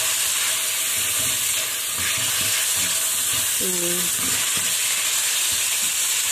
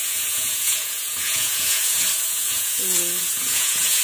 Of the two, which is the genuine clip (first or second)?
first